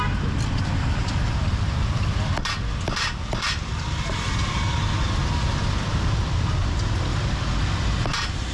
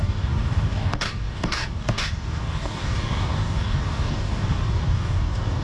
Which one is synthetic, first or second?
second